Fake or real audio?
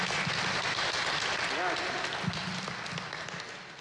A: real